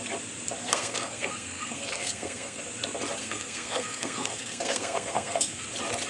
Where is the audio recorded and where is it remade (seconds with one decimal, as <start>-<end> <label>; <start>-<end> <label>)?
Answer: 0.0-0.6 recorded; 0.6-2.6 remade; 2.6-3.2 recorded; 3.2-5.6 remade; 5.6-6.1 recorded